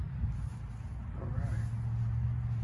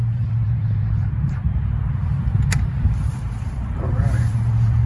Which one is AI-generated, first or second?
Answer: second